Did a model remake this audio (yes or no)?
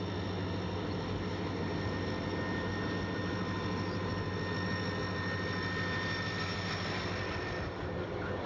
no